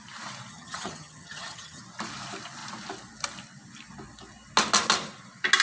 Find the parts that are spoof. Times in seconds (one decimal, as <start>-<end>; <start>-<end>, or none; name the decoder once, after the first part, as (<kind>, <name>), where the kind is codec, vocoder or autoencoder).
0.5-1.8 (vocoder, HiFi-GAN)